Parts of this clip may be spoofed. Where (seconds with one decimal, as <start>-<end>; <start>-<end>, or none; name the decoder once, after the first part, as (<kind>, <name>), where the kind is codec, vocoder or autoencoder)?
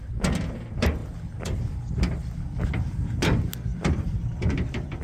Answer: 1.0-1.6 (vocoder, BigVGAN v2); 3.7-5.0